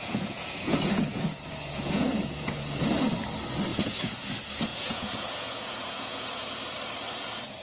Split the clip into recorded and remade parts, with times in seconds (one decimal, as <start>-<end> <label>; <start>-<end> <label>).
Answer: 0.0-2.9 remade; 2.9-3.7 recorded; 3.7-4.3 remade; 4.3-4.7 recorded; 4.7-6.5 remade; 6.5-7.6 recorded